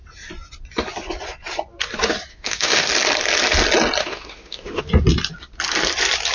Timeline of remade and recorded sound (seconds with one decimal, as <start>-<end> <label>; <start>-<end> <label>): 0.0-2.3 recorded; 2.3-2.9 remade; 2.9-4.0 recorded; 4.0-4.8 remade; 4.8-6.3 recorded